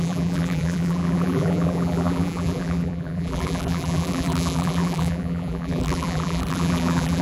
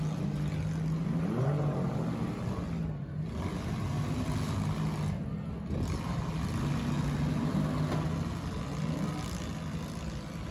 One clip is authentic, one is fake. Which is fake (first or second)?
first